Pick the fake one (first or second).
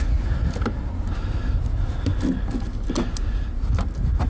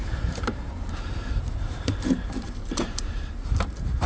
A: second